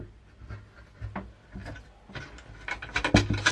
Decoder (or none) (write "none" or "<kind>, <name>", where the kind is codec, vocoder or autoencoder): none